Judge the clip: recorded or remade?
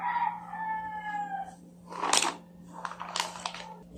recorded